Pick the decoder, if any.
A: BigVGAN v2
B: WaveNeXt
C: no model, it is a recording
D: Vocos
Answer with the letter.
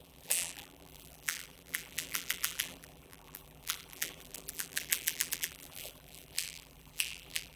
A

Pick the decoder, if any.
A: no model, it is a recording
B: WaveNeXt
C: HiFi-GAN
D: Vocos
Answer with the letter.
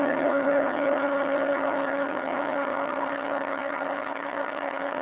C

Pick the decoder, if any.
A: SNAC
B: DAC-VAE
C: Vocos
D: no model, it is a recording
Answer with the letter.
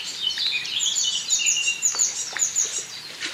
D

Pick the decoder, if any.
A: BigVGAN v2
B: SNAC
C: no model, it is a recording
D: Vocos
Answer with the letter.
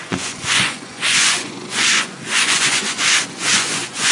D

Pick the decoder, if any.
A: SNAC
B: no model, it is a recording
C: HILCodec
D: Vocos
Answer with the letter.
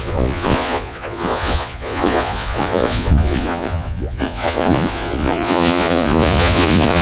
D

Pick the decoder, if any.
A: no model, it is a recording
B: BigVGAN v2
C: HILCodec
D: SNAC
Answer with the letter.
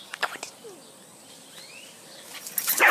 A